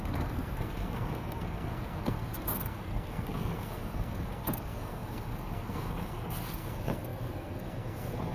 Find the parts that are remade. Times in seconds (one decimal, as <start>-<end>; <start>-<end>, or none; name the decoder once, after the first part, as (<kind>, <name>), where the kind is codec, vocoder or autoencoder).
0.0-8.3 (codec, SNAC)